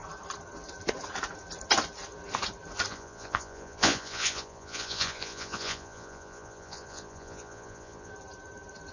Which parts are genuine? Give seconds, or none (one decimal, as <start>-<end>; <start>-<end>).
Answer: 0.0-2.9; 8.1-8.9